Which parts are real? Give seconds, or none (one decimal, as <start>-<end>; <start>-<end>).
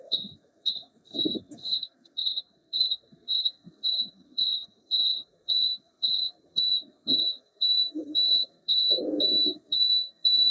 none